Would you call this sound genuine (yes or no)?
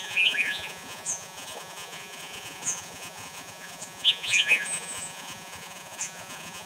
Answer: no